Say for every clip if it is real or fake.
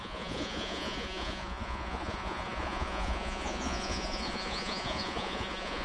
fake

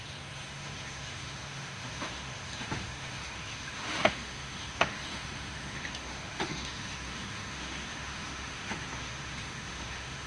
fake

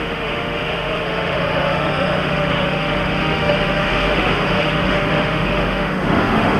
fake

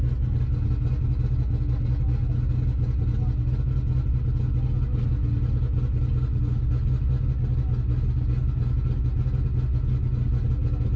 real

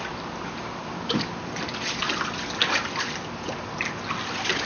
real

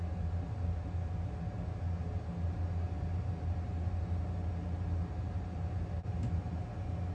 real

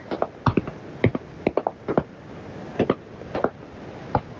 real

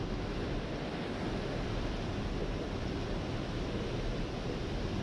real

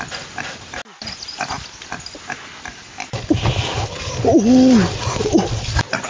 real